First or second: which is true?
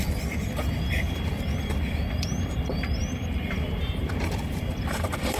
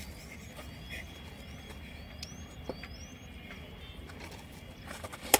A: second